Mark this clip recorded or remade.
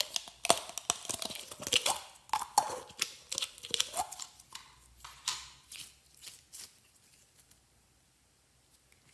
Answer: recorded